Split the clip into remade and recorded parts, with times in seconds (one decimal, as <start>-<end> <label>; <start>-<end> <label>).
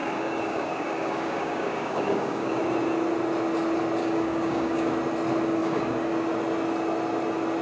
0.0-2.6 remade; 2.6-4.0 recorded; 4.0-4.9 remade; 4.9-5.6 recorded; 5.6-6.1 remade; 6.1-7.6 recorded